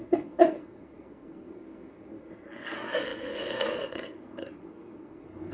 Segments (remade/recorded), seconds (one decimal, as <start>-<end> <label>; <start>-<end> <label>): 0.0-5.5 remade